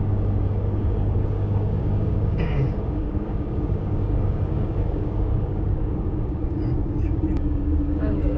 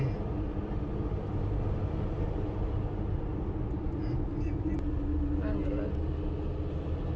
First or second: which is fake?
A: first